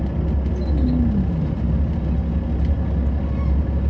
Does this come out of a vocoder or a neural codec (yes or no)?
no